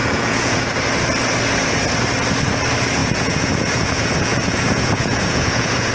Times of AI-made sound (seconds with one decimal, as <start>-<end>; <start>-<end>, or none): 0.0-0.6; 3.0-5.9